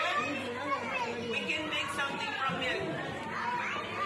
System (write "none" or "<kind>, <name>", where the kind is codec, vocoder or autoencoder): none